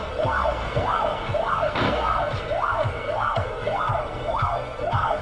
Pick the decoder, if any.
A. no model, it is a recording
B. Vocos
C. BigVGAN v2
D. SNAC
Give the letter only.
D